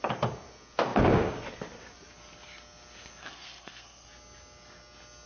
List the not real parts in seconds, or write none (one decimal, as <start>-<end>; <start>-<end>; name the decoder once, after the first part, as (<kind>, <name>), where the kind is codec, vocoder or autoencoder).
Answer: 3.2-4.1 (codec, SNAC)